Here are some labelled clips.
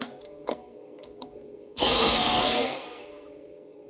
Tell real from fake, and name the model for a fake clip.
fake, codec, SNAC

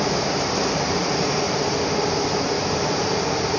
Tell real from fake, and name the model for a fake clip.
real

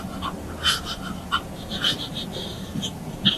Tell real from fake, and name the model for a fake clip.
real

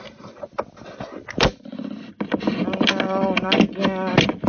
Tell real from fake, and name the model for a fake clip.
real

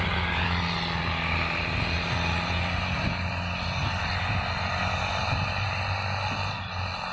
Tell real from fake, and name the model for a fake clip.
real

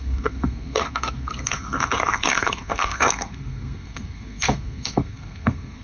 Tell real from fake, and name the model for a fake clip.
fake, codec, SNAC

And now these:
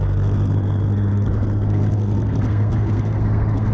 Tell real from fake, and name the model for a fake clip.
fake, codec, SNAC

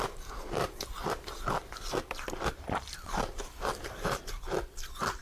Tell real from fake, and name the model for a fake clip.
real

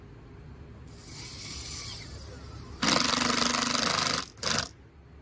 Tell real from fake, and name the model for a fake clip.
real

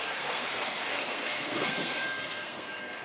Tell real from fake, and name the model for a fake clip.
fake, codec, SNAC